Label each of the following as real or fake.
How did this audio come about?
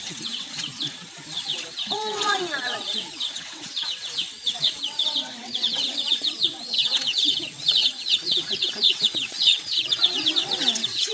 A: fake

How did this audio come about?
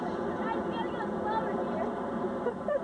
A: real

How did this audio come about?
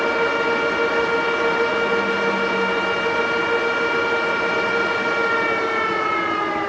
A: real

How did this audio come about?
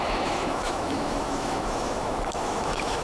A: fake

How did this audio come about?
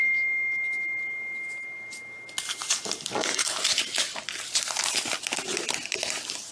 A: real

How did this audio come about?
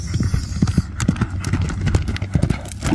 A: real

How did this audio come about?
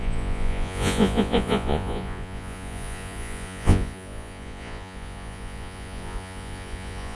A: fake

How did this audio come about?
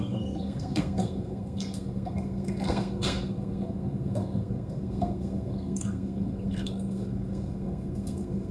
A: fake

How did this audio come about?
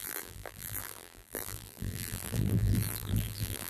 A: fake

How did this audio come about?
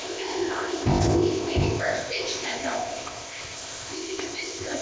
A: fake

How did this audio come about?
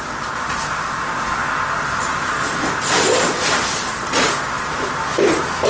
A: real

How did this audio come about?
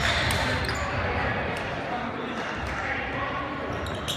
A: real